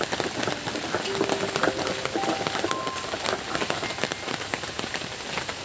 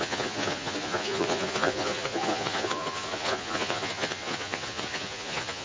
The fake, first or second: second